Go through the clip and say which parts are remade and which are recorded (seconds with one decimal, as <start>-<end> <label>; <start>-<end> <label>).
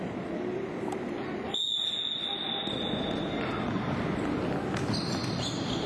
0.0-5.9 recorded